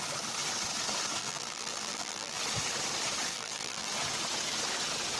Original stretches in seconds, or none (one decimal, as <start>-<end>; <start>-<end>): 0.0-1.2; 2.4-3.3; 3.9-5.2

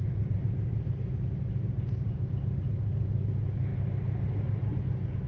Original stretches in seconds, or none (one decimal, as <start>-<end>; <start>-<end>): 2.6-5.3

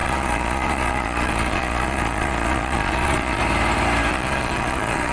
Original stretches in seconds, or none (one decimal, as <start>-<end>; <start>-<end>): 3.4-4.1